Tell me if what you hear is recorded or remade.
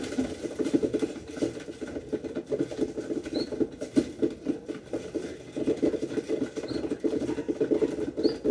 recorded